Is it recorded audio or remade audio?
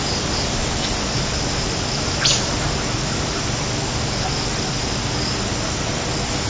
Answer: recorded